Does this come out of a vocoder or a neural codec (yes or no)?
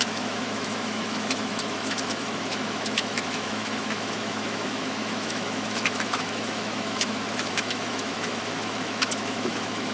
yes